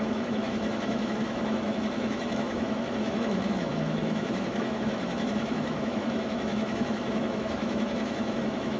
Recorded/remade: remade